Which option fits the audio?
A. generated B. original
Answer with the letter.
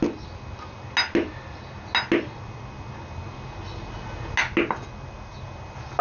B